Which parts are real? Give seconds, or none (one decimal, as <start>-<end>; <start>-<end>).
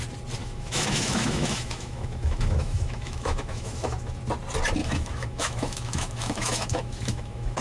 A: 0.0-0.4; 4.2-4.8